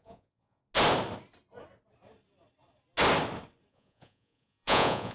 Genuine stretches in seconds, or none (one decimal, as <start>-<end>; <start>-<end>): 0.6-3.7